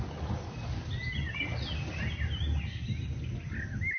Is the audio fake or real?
real